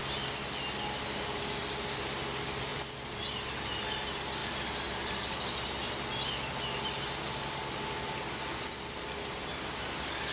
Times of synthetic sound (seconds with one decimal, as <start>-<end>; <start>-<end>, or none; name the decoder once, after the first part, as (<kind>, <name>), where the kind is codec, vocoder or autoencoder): none